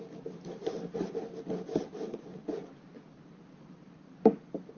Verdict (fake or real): real